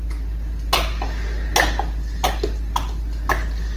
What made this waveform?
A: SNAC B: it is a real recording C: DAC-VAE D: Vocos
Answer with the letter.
B